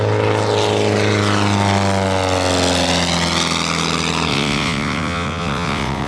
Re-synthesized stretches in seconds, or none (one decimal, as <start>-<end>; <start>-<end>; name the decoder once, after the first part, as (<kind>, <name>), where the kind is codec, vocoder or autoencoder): 4.3-6.1 (vocoder, WaveNeXt)